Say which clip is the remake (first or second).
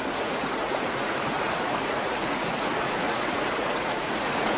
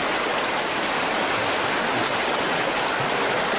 first